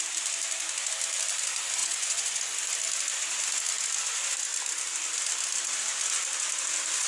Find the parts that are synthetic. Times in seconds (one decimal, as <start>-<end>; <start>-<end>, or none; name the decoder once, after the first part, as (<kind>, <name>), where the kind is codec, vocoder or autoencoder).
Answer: 1.8-2.4 (vocoder, Vocos)